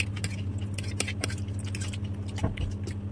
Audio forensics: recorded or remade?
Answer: recorded